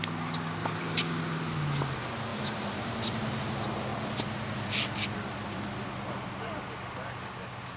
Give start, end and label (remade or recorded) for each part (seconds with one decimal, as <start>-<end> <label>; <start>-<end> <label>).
0.0-0.6 recorded; 0.6-1.2 remade; 1.2-2.3 recorded; 2.3-3.5 remade; 3.5-7.8 recorded